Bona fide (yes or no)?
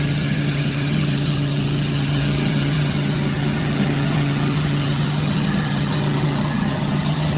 no